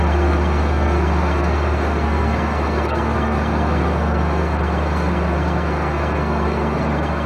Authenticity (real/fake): fake